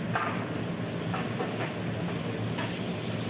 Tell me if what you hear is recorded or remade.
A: recorded